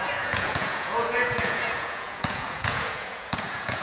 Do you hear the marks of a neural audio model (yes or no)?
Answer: yes